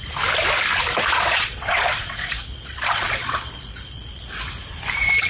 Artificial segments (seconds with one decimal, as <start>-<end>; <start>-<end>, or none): 1.1-4.3